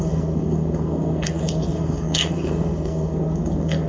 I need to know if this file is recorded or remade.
remade